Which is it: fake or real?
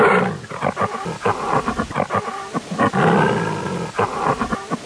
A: real